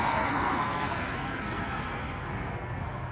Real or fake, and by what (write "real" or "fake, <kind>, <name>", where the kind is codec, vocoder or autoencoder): fake, codec, SNAC